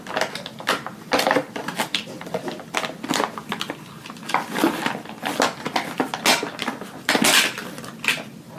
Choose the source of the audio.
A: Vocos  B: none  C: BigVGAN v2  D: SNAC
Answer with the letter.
B